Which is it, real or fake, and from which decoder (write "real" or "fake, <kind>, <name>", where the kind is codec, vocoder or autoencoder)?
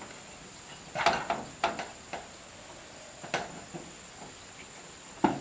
real